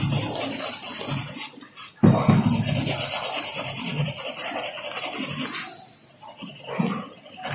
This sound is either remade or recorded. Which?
recorded